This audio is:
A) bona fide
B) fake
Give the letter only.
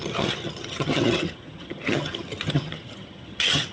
B